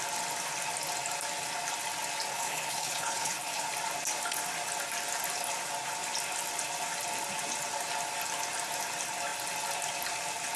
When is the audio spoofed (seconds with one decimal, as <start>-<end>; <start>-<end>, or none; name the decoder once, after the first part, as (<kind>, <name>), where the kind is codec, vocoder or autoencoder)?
2.3-3.7 (codec, HILCodec)